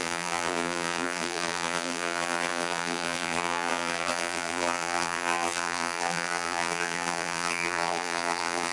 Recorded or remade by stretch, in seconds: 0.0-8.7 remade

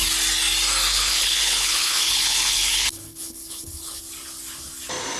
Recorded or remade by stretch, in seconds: 0.0-0.9 recorded; 0.9-4.0 remade; 4.0-5.2 recorded

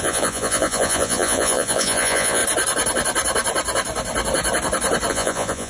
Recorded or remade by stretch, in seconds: 0.0-2.4 remade; 2.4-5.1 recorded; 5.1-5.7 remade

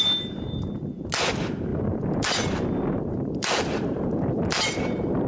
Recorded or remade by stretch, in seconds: 0.0-1.7 recorded; 1.7-5.3 remade

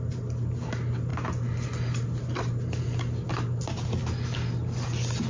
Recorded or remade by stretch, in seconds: 0.0-5.3 recorded

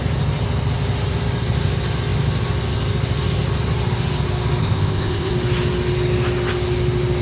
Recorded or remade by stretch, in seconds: 0.0-4.6 recorded; 4.6-5.3 remade; 5.3-7.2 recorded